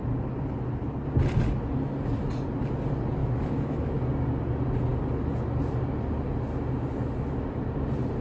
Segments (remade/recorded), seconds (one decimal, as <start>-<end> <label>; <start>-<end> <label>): 0.0-3.2 recorded; 3.2-4.0 remade; 4.0-8.2 recorded